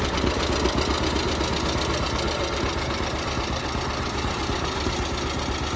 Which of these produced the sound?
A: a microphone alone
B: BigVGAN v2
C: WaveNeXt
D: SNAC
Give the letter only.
A